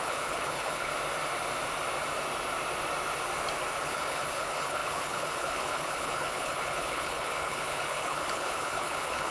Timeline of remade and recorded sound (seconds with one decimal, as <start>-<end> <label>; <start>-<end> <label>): 0.0-0.9 remade; 0.9-3.8 recorded; 3.8-9.3 remade